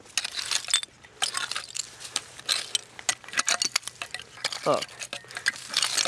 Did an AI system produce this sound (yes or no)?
no